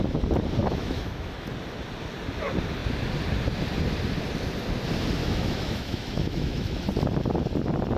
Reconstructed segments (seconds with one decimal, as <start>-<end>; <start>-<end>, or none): 0.6-1.5; 5.2-6.9